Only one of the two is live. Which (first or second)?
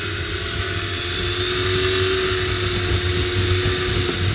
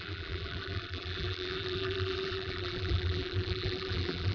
first